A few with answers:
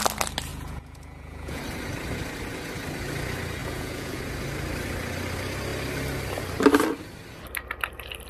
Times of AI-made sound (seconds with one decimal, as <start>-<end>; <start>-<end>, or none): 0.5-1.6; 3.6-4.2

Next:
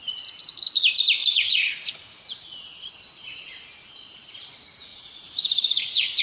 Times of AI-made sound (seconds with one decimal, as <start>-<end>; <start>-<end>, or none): 1.2-2.9; 4.9-6.2

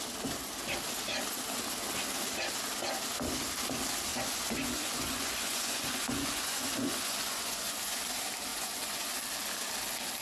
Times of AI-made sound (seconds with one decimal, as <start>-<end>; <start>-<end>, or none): 4.1-8.0; 8.5-9.1

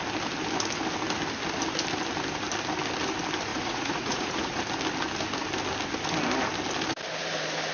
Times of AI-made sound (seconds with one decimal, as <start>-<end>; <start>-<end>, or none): 3.5-4.6

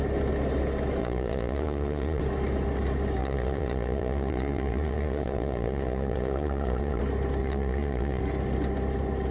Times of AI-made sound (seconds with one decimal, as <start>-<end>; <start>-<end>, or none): 1.0-2.2; 3.2-7.0; 7.4-8.2